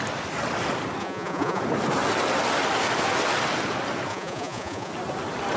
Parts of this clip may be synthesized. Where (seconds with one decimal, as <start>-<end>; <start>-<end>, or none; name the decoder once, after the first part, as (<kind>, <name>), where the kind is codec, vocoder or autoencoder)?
1.0-1.6 (vocoder, Vocos); 4.1-4.9

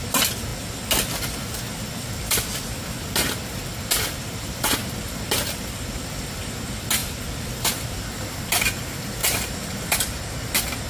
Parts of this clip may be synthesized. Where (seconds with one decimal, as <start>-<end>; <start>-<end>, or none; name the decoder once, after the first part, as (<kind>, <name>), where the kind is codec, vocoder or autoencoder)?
9.2-10.0 (vocoder, BigVGAN v2)

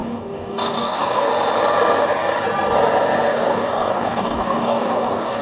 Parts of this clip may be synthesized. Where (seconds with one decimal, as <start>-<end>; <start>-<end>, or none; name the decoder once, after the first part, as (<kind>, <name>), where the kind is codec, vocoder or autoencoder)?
0.0-1.3 (codec, DAC); 3.3-5.4

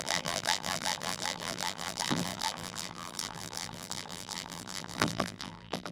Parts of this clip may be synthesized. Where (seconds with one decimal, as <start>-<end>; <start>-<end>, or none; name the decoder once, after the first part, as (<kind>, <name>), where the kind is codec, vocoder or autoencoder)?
0.0-5.9 (vocoder, BigVGAN v2)

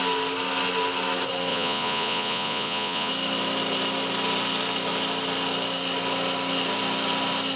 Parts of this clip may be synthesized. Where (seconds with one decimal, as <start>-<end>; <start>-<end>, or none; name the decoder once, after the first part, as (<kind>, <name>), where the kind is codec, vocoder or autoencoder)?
1.5-3.1 (vocoder, Vocos)

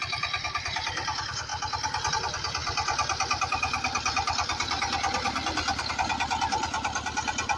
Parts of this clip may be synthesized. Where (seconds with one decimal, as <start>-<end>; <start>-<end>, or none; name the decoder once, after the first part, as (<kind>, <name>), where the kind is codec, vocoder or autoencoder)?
none

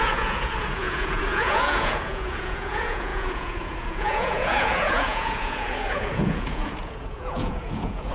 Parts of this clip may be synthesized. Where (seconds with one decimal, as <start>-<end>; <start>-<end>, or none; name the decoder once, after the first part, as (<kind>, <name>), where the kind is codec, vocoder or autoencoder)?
0.0-8.1 (vocoder, Vocos)